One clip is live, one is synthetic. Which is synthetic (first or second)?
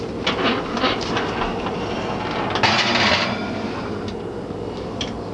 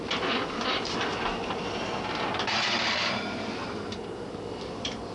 second